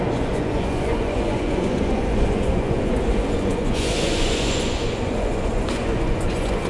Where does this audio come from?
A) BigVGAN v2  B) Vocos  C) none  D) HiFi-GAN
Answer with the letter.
B